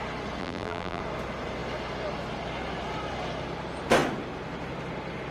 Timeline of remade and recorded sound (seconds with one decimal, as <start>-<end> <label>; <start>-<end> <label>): 0.0-0.4 recorded; 0.4-1.0 remade; 1.0-5.3 recorded